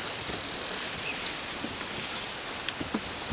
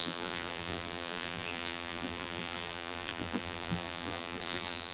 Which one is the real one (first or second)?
first